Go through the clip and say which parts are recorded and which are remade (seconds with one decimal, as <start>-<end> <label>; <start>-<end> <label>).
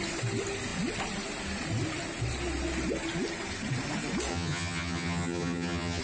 0.0-4.3 recorded; 4.3-6.0 remade